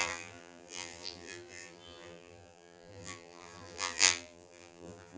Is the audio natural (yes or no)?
no